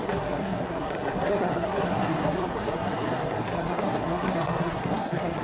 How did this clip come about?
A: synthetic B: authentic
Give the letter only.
A